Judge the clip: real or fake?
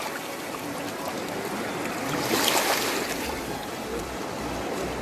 real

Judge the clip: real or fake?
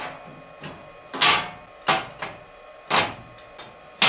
real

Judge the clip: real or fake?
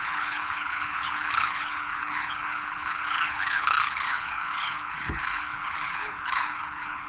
fake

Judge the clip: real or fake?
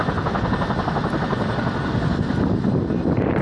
real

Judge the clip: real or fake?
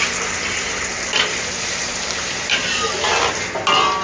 real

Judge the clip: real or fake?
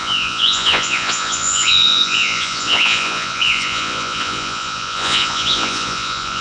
fake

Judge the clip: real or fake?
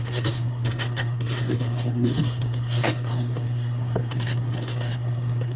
fake